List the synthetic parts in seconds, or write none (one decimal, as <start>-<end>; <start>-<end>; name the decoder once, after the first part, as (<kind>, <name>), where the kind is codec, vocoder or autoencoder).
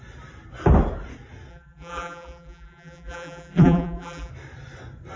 1.5-4.3 (vocoder, BigVGAN v2)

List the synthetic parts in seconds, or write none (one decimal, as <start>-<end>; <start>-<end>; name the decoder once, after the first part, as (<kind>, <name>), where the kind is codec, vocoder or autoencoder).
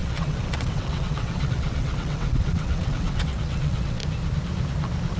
0.0-4.0 (vocoder, WaveNeXt)